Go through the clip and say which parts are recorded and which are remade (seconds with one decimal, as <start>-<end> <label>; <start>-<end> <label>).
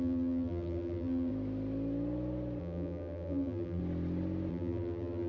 0.0-1.3 remade; 1.3-2.6 recorded; 2.6-3.8 remade; 3.8-4.5 recorded; 4.5-5.3 remade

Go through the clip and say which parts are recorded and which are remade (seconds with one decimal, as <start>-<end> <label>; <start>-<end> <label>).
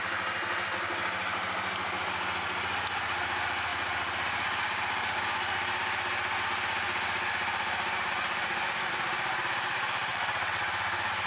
0.0-10.1 recorded; 10.1-10.7 remade; 10.7-11.3 recorded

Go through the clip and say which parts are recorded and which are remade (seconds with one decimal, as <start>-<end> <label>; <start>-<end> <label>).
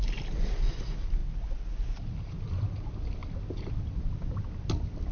0.0-3.2 remade; 3.2-3.7 recorded; 3.7-5.1 remade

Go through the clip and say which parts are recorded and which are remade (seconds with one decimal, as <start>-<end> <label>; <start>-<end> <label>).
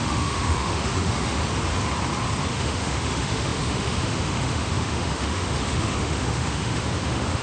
0.0-1.4 remade; 1.4-2.5 recorded; 2.5-7.4 remade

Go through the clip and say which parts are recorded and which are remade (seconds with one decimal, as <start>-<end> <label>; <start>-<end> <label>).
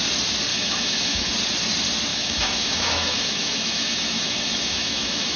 0.0-0.5 recorded; 0.5-1.3 remade; 1.3-2.1 recorded; 2.1-5.4 remade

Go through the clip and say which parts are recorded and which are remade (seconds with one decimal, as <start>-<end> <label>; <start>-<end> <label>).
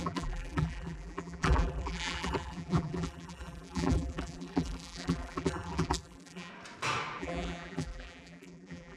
0.0-6.5 remade; 6.5-7.2 recorded; 7.2-9.0 remade